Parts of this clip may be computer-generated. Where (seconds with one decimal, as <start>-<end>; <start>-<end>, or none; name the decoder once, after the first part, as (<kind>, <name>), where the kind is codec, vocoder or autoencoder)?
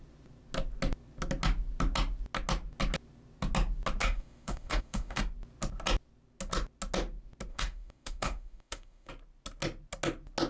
4.0-5.2 (autoencoder, DAC-VAE); 7.5-9.1